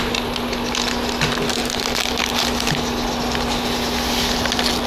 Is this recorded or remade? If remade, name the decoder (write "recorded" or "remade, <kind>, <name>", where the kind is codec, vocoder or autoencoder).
recorded